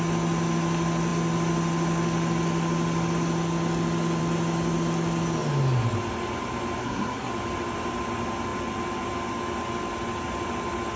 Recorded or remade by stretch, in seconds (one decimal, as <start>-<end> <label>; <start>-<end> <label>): 0.0-6.8 recorded; 6.8-7.3 remade; 7.3-11.0 recorded